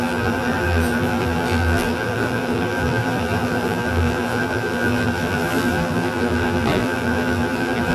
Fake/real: fake